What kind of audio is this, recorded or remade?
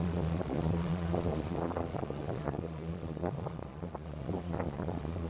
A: remade